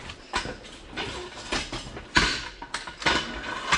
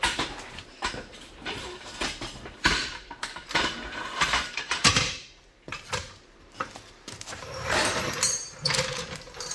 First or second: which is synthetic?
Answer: second